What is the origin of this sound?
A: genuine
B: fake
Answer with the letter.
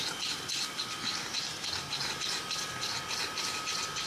A